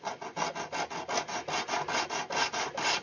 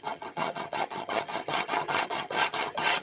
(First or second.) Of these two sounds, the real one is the first